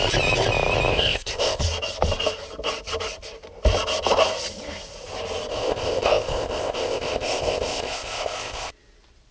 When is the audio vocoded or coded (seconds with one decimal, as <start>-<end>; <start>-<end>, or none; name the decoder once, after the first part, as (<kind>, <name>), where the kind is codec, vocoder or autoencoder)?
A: 0.9-1.6 (codec, ZipCodec); 5.5-8.7